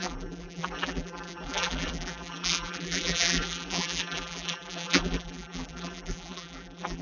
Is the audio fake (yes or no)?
yes